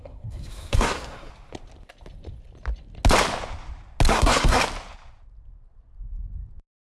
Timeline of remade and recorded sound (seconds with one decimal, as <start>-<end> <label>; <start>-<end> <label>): 0.0-1.3 remade; 1.3-4.1 recorded; 4.1-4.6 remade; 4.6-6.8 recorded